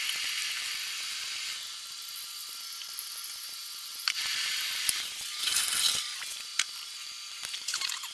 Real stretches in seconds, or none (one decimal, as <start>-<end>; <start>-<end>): 0.0-3.9; 6.0-8.1